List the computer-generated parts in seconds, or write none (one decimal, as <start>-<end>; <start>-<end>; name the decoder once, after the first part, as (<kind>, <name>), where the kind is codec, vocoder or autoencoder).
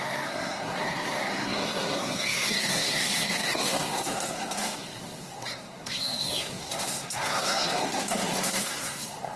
0.0-9.4 (codec, SNAC)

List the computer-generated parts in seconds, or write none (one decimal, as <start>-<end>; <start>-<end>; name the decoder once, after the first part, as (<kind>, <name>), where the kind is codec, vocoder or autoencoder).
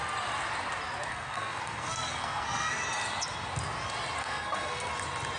1.1-2.8 (codec, SNAC); 4.2-4.9